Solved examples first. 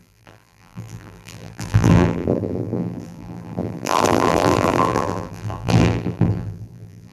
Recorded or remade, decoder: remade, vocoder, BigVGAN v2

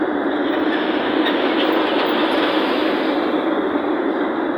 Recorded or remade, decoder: recorded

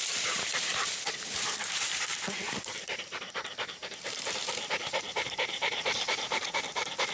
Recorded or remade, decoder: remade, vocoder, BigVGAN v2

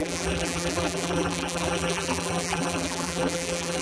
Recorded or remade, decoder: remade, vocoder, BigVGAN v2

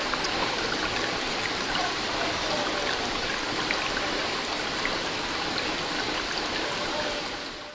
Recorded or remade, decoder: remade, vocoder, BigVGAN v2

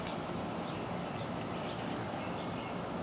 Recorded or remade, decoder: recorded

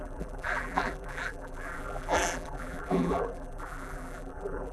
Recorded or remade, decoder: remade, vocoder, BigVGAN v2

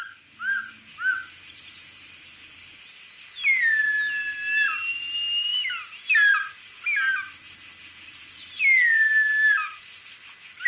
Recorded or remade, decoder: recorded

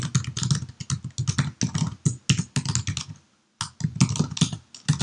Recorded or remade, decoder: recorded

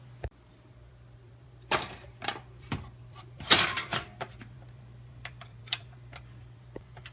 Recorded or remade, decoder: remade, vocoder, BigVGAN v2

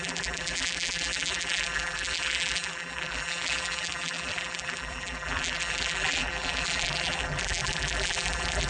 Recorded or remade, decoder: remade, vocoder, BigVGAN v2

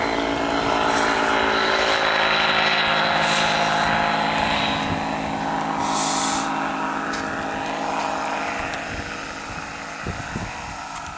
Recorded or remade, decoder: recorded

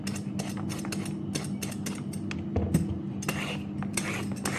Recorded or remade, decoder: recorded